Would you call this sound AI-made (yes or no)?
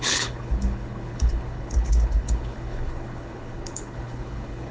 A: yes